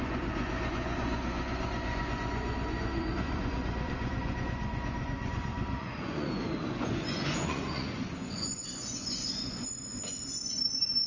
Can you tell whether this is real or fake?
fake